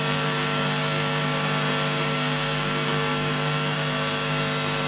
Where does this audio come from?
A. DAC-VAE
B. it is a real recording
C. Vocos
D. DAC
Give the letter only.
D